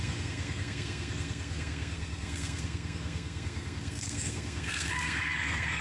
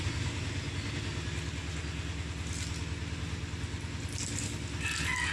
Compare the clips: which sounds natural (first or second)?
second